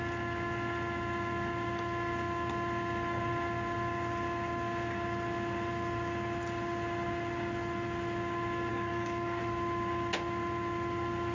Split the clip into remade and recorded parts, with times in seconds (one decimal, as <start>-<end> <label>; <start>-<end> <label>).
0.0-8.7 recorded; 8.7-9.4 remade; 9.4-11.3 recorded